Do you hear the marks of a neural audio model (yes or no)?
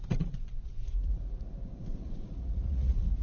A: yes